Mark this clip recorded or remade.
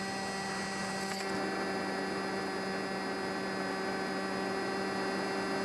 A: recorded